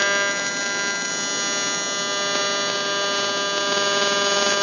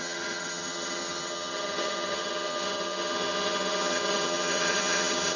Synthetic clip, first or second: second